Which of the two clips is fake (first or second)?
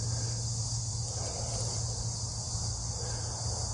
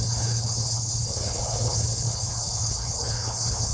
second